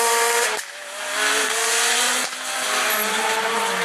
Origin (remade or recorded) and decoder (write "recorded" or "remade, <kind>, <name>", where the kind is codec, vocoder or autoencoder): recorded